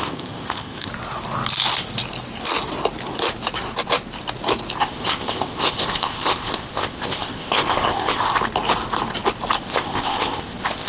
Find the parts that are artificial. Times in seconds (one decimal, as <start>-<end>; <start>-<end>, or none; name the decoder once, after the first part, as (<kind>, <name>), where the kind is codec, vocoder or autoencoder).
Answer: 0.0-0.9 (codec, ZipCodec); 4.8-8.3; 9.6-10.9